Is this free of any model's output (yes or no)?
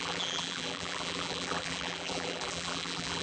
no